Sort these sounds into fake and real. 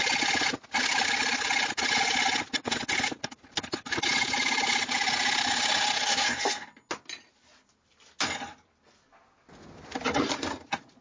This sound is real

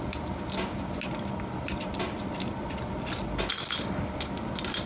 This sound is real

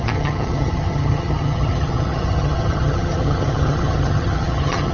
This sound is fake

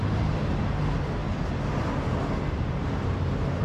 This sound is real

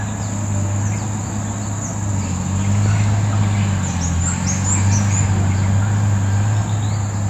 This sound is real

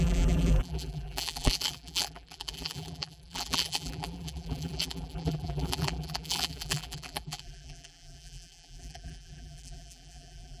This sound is fake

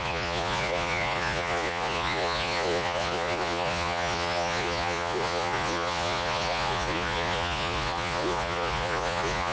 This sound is fake